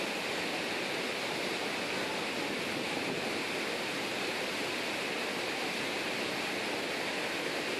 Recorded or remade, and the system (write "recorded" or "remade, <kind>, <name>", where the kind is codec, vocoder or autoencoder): recorded